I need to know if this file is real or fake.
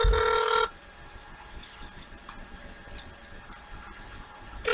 real